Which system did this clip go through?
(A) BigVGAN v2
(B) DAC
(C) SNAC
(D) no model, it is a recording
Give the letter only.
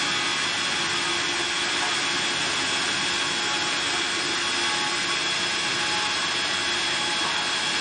D